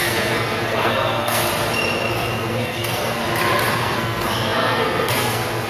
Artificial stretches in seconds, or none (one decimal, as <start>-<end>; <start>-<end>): 0.0-1.4; 2.1-3.2; 3.7-5.7